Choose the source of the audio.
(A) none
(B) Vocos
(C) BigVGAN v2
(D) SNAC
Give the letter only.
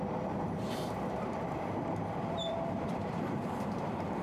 C